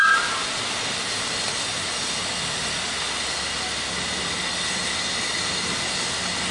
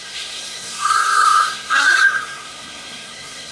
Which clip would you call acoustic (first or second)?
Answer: first